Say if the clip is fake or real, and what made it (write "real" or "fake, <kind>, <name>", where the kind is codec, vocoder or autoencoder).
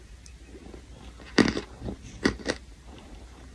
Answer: fake, vocoder, BigVGAN v2